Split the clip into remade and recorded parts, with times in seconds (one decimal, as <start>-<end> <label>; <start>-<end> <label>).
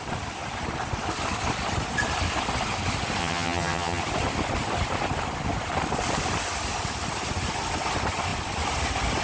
0.0-3.2 recorded; 3.2-4.0 remade; 4.0-9.2 recorded